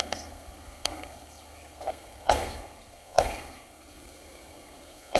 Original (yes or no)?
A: no